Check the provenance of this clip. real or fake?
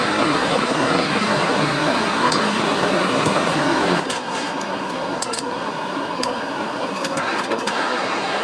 fake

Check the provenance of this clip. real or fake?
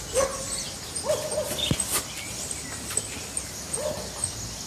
real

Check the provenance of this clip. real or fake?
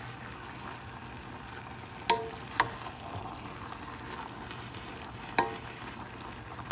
real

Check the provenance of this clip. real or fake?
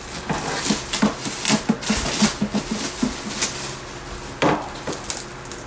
real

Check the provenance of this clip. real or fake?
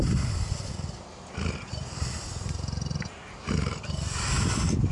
real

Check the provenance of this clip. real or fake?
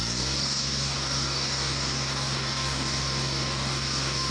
fake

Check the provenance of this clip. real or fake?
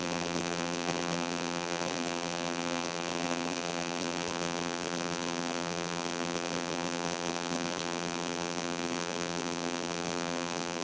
fake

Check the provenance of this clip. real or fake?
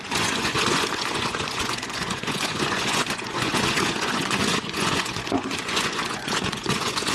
fake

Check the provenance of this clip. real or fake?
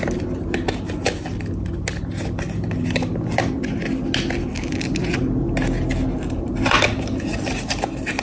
real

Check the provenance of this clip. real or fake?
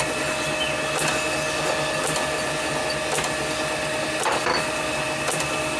real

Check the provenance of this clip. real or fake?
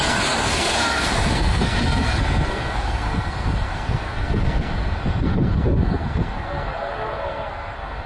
fake